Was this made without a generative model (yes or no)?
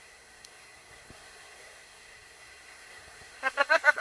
no